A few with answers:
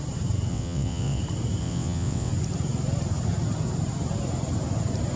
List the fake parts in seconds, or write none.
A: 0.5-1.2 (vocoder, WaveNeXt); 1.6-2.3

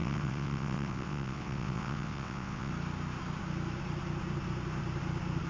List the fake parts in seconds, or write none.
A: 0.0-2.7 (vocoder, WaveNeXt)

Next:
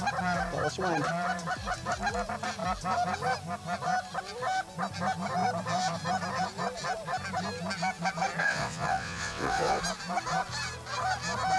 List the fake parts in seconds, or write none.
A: 8.4-9.8 (vocoder, WaveNeXt)

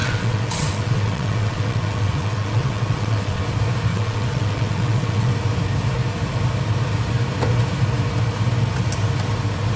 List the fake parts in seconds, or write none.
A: 0.0-3.4 (vocoder, WaveNeXt); 3.9-5.3

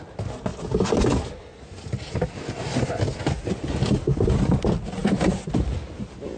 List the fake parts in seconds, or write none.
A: none